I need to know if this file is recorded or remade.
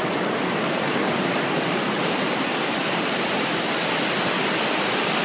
recorded